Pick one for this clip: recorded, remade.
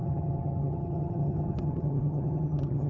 remade